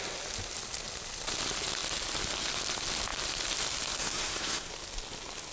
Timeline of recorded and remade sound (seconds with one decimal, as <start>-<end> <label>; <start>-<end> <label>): 0.0-4.0 recorded; 4.0-4.7 remade; 4.7-5.5 recorded